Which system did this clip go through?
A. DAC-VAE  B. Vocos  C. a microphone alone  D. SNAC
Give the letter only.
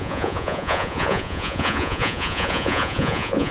B